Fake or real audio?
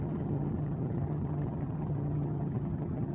fake